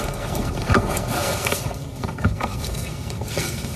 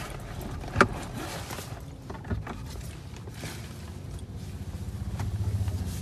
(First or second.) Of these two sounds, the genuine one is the second